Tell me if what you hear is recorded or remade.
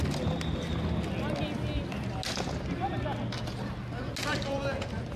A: recorded